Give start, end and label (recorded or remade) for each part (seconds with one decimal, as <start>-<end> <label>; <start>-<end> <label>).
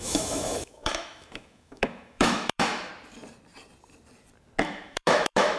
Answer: 0.0-2.9 remade; 2.9-4.6 recorded; 4.6-5.6 remade